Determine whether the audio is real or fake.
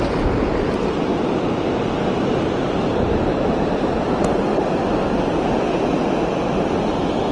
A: real